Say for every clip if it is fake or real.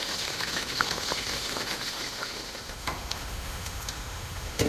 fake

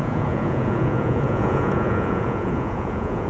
fake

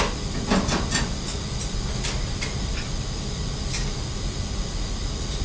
real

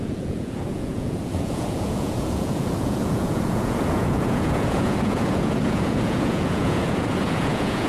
fake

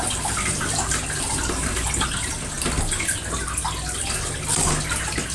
real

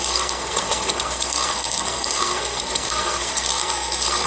fake